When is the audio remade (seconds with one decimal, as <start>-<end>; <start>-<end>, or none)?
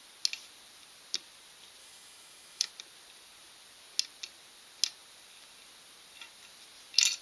1.8-2.7